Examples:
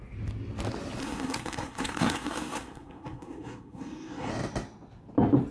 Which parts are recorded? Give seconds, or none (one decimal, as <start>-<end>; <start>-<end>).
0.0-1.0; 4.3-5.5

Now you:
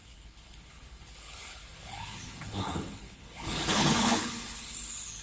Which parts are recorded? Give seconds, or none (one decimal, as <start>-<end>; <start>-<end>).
none

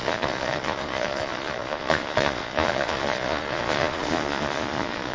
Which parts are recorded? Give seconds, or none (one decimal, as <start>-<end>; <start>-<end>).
none

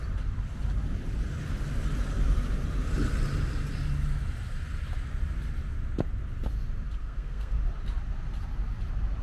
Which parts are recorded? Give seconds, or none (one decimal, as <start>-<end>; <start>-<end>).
0.0-7.0; 7.6-9.2